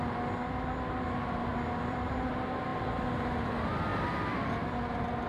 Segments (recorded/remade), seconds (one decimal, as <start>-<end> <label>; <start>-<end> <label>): 0.0-1.5 recorded; 1.5-2.3 remade; 2.3-2.7 recorded; 2.7-3.5 remade; 3.5-5.3 recorded